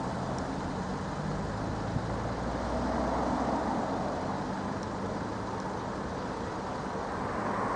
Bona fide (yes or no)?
yes